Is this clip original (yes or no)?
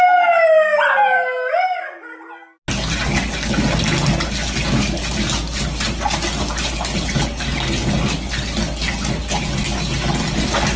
yes